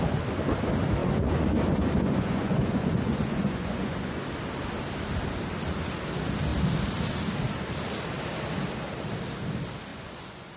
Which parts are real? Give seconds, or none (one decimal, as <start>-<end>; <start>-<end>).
0.0-1.0; 4.2-9.9